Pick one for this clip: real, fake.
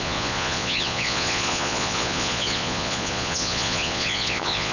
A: fake